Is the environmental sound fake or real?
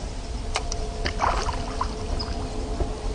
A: real